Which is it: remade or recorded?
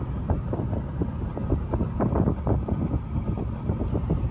recorded